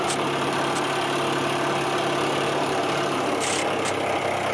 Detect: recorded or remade recorded